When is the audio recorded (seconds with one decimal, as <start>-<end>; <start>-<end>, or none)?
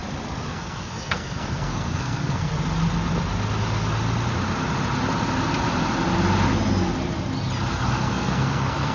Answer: 0.0-0.5; 2.5-7.7